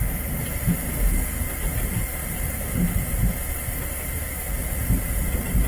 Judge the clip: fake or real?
real